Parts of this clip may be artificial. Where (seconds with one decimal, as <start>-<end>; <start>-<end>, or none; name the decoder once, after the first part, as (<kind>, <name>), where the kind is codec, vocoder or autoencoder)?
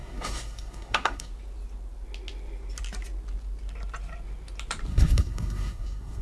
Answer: 0.0-1.3 (codec, SNAC); 4.9-6.2